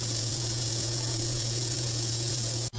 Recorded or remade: remade